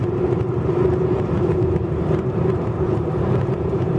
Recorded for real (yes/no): no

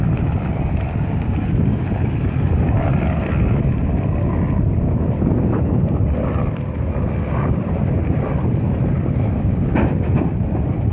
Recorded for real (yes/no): yes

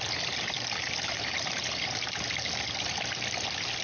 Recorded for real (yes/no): yes